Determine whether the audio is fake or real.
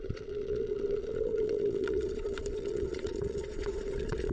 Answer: fake